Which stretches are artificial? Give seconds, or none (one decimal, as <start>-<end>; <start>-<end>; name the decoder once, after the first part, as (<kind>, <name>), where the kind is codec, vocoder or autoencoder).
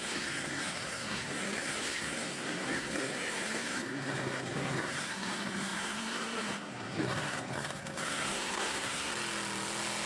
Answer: 0.0-9.1 (codec, SNAC)